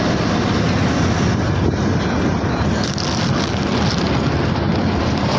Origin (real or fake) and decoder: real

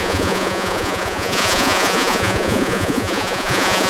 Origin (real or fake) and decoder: fake, vocoder, Vocos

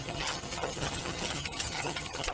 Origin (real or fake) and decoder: fake, vocoder, HiFi-GAN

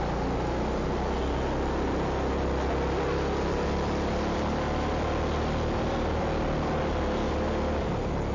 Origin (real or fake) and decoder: real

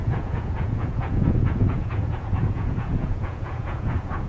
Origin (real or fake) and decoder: fake, vocoder, Vocos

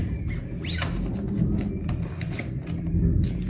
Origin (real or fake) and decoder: real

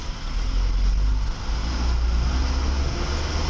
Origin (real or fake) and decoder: real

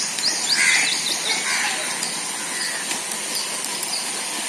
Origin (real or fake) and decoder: real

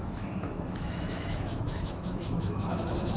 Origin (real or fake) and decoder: fake, autoencoder, DAC-VAE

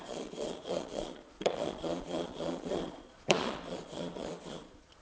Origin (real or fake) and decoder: fake, vocoder, Vocos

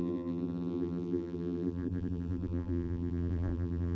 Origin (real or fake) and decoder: fake, vocoder, BigVGAN v2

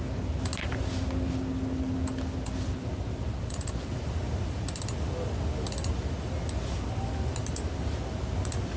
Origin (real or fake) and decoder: real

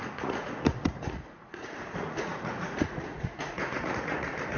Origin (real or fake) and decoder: fake, vocoder, Vocos